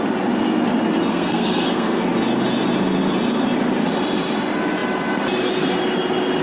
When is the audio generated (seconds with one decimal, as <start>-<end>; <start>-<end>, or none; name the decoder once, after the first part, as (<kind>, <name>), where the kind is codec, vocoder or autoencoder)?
1.1-2.1 (codec, SNAC)